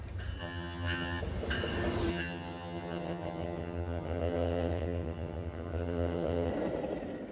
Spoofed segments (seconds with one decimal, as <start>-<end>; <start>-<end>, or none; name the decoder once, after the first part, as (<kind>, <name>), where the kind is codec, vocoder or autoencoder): 0.4-1.2 (vocoder, HiFi-GAN); 2.1-6.5